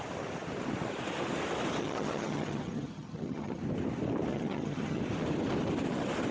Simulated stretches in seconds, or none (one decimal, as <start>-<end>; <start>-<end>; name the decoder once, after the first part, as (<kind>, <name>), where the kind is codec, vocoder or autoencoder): 1.8-3.6 (vocoder, HiFi-GAN); 4.3-5.0